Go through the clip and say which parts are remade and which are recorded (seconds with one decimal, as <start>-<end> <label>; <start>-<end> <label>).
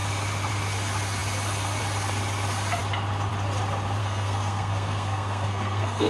0.0-4.0 recorded; 4.0-6.1 remade